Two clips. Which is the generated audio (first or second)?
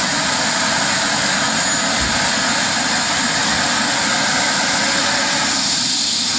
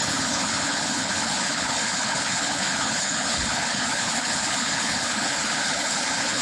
second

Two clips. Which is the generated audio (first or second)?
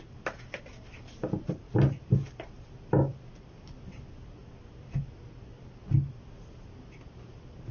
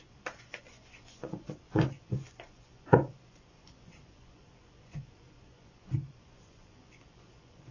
second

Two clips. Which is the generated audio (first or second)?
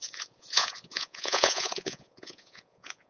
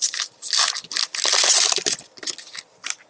first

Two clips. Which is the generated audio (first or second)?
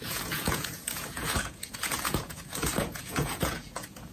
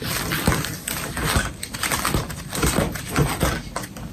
first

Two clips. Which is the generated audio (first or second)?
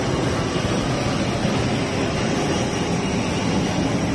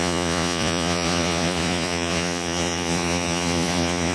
second